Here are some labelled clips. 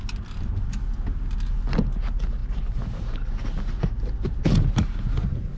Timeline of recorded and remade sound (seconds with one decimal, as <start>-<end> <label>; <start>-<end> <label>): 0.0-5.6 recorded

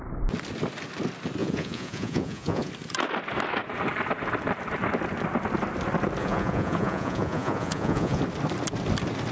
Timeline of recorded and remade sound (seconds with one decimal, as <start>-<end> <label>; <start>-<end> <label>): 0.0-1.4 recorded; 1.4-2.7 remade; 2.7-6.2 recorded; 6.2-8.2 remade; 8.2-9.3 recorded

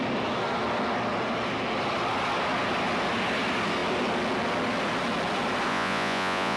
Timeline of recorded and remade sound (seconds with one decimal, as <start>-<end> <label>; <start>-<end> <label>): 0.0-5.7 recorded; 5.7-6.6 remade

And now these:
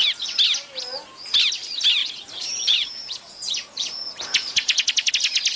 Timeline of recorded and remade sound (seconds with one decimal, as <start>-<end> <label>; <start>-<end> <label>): 0.0-2.0 recorded; 2.0-5.1 remade; 5.1-5.6 recorded